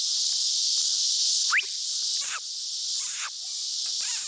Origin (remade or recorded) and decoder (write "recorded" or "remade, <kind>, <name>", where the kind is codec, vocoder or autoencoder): recorded